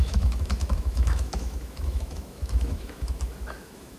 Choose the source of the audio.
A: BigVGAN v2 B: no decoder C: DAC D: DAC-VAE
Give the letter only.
D